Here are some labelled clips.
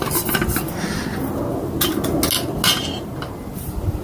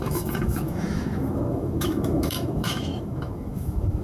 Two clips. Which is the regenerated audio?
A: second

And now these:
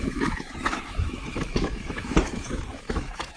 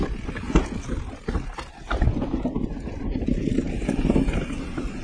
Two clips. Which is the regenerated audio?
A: first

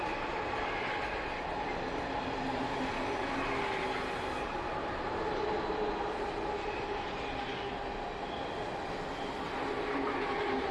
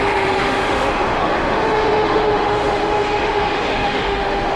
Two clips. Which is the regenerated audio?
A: second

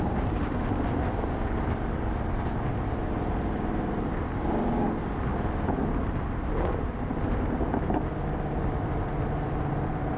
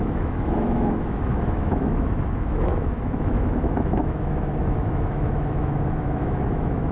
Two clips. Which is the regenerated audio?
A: second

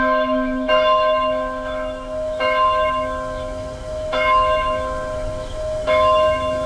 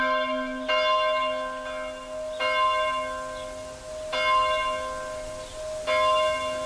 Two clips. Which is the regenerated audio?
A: first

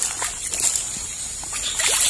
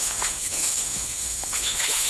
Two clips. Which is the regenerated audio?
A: second